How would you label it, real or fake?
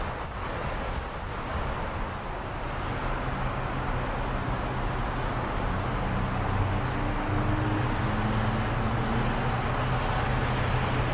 real